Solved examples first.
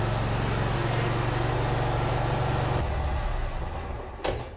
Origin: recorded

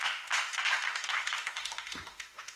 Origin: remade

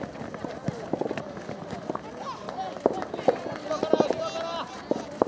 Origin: recorded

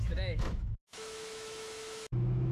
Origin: remade